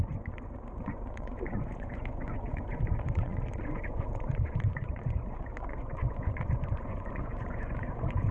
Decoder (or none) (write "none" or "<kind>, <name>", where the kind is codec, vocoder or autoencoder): vocoder, Vocos